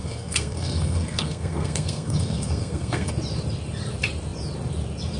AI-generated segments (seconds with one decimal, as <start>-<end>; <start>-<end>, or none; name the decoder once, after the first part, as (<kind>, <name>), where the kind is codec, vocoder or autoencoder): 0.0-3.1 (codec, SNAC)